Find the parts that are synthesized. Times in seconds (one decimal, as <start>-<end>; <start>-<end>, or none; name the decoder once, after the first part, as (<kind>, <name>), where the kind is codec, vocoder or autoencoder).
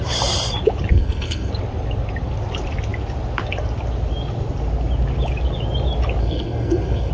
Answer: 0.9-1.5 (codec, SNAC); 6.2-7.1